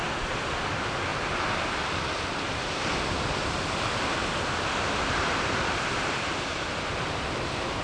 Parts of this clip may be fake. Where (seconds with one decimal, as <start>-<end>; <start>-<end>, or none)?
0.0-1.1; 1.9-6.9